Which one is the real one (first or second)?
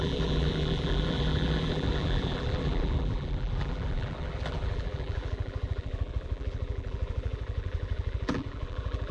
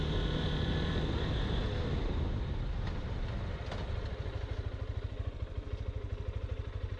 second